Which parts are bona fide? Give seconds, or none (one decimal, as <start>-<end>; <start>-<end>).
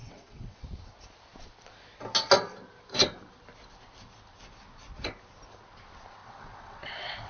0.6-6.2